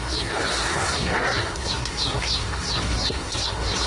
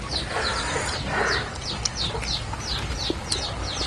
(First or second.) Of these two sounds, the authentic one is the second